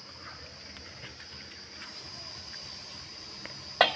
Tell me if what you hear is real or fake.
real